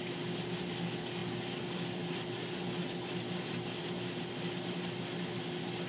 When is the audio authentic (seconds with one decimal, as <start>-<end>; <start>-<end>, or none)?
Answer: 0.0-5.9